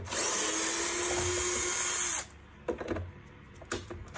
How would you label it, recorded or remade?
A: recorded